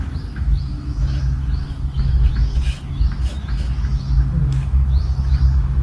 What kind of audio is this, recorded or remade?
remade